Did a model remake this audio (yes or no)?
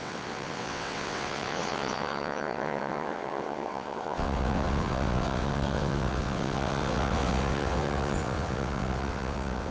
yes